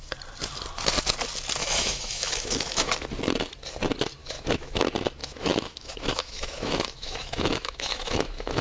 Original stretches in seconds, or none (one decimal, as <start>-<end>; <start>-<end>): 0.0-1.6; 2.9-4.2; 4.8-5.2